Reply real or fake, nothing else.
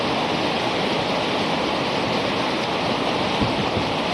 real